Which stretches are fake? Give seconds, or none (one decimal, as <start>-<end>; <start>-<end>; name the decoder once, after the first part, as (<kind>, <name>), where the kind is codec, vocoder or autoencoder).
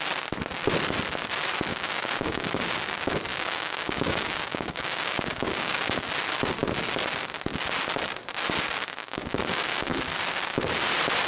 1.7-2.6 (codec, DAC); 3.3-6.1; 9.0-10.0